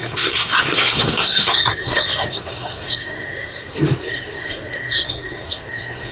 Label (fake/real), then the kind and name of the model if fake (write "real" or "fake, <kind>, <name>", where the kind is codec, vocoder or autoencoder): fake, codec, SNAC